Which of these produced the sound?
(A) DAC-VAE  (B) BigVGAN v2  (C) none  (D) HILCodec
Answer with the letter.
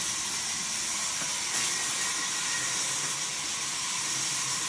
C